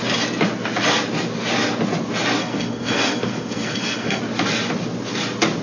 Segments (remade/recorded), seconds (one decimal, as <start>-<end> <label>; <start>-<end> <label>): 0.0-2.4 recorded; 2.4-4.2 remade; 4.2-5.6 recorded